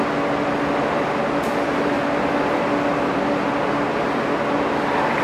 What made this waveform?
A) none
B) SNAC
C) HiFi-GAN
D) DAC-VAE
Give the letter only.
A